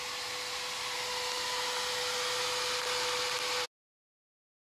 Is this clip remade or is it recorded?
recorded